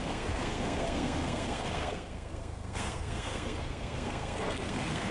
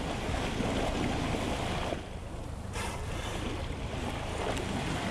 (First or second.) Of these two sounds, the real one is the second